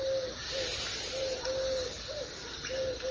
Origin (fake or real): real